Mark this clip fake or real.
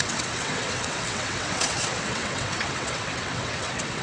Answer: fake